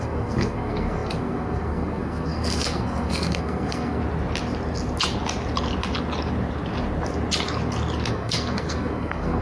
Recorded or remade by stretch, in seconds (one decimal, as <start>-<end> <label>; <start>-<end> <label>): 0.0-4.0 remade; 4.0-8.1 recorded; 8.1-9.4 remade